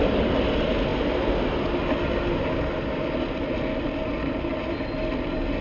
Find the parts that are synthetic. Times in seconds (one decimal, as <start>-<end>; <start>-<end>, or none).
none